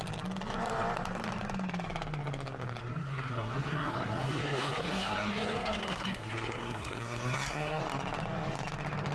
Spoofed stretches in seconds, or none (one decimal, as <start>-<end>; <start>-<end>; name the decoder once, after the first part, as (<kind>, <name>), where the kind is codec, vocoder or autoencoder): 2.8-7.8 (codec, SNAC)